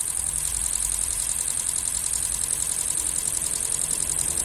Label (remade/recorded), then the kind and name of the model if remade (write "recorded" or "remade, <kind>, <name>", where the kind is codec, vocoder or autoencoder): remade, vocoder, Vocos